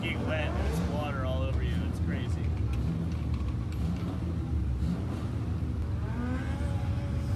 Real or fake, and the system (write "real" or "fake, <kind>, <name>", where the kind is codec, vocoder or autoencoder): real